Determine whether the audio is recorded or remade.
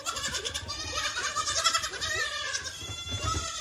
remade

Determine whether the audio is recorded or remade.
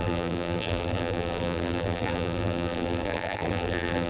remade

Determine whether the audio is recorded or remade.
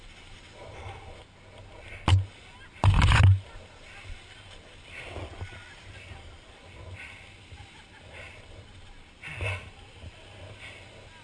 recorded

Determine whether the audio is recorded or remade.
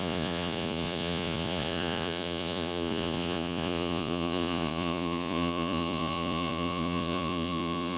remade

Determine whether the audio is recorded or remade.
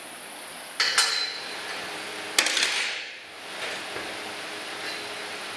recorded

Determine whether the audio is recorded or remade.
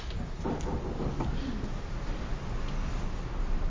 recorded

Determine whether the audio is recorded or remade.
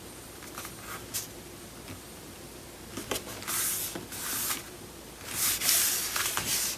recorded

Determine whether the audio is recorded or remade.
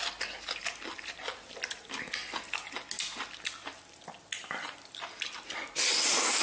recorded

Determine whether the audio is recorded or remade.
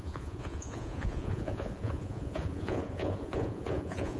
remade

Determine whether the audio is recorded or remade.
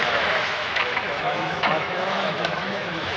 remade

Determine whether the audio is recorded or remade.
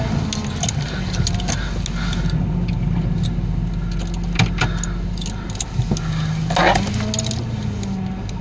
recorded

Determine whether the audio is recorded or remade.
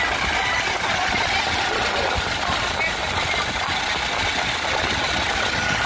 recorded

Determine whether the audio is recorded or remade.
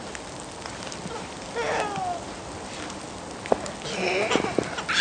recorded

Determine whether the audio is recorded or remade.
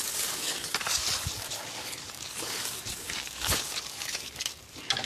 remade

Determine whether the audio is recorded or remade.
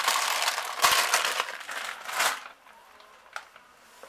recorded